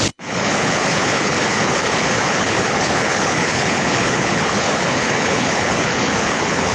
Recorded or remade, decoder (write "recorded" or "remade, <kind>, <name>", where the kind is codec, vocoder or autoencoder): remade, codec, HILCodec